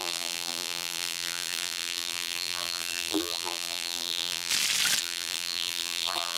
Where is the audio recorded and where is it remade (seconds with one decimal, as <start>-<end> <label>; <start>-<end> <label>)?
0.0-4.5 remade; 4.5-5.0 recorded; 5.0-6.4 remade